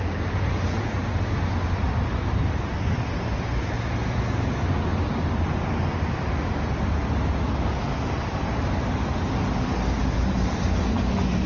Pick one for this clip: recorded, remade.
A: recorded